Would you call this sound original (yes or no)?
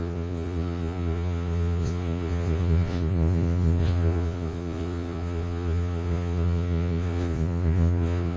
no